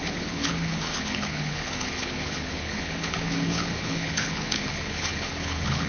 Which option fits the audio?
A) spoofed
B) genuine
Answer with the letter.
A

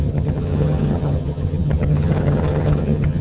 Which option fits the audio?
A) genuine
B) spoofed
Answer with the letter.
B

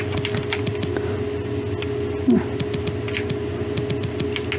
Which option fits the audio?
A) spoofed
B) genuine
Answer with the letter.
B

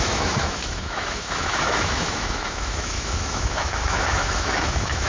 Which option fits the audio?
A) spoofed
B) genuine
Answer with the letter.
A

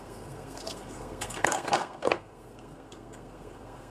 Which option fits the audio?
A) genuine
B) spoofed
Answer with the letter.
B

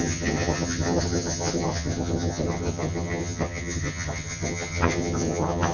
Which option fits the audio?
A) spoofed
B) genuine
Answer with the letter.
A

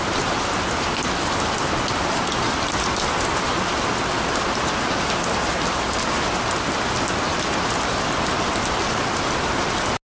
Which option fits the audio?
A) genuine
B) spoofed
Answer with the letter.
A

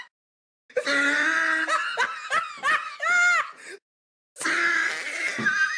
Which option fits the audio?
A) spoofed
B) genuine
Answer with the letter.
B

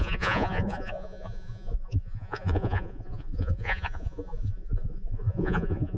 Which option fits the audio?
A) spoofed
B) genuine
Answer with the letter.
A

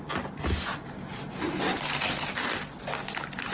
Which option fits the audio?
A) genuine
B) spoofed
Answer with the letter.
A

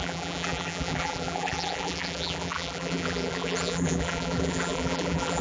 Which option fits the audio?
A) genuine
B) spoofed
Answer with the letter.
B